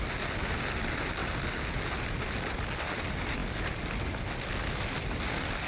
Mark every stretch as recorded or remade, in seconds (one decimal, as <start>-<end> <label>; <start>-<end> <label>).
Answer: 0.0-5.7 recorded